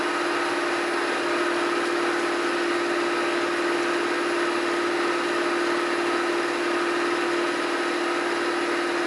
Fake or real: real